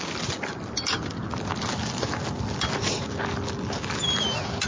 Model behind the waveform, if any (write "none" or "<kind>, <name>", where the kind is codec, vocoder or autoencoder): none